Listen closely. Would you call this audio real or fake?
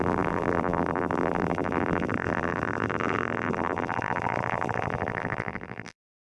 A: fake